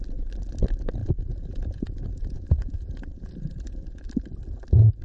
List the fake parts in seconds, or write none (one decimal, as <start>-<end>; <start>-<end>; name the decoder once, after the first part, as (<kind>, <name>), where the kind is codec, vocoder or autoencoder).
1.0-4.0 (vocoder, Vocos)